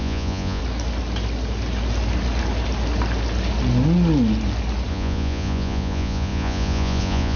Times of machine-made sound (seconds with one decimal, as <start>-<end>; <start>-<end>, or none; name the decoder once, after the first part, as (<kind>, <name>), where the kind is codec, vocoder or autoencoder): 0.0-0.6 (vocoder, Vocos); 4.9-7.4